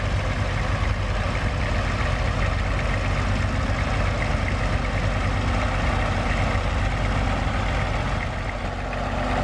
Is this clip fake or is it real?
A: real